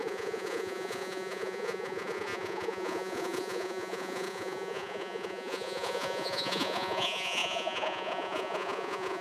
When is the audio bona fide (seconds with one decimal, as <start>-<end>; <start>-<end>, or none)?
none